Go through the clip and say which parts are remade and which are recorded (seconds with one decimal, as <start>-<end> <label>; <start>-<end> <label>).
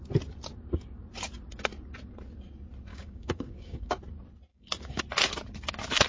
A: 0.0-2.9 recorded; 2.9-4.0 remade; 4.0-4.5 recorded; 4.5-5.0 remade; 5.0-6.1 recorded